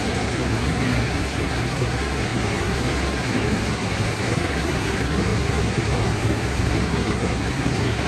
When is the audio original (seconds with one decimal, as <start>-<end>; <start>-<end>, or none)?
none

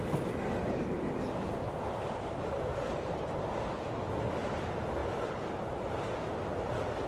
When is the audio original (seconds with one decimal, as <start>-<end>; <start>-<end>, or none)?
0.0-7.1

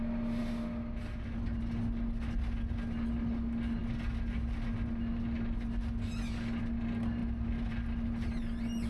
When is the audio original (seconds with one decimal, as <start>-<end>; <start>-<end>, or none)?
0.0-8.9

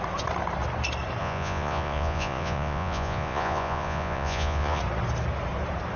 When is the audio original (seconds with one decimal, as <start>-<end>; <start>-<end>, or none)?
0.0-1.2; 4.8-6.0

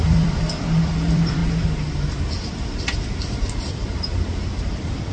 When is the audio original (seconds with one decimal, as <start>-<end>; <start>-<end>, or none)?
1.4-2.8

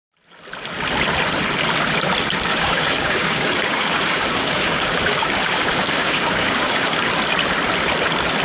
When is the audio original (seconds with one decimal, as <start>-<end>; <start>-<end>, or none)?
0.0-2.5; 7.1-8.4